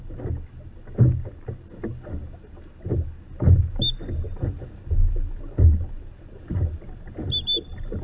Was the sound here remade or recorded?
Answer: recorded